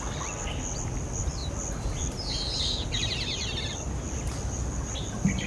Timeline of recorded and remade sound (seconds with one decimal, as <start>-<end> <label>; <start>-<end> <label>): 0.0-5.5 recorded